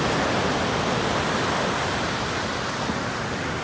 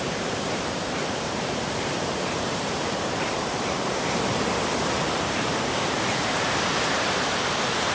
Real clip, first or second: first